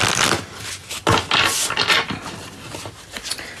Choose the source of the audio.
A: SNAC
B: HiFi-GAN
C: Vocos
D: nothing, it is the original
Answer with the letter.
D